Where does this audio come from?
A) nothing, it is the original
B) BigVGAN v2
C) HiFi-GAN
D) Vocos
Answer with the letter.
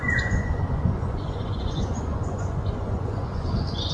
D